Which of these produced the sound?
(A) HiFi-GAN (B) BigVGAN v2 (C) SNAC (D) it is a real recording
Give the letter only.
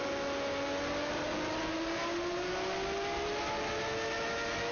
D